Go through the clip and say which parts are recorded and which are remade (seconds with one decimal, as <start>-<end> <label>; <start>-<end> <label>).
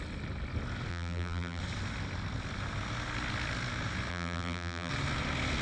0.0-0.9 recorded; 0.9-1.6 remade; 1.6-4.1 recorded; 4.1-4.9 remade; 4.9-5.6 recorded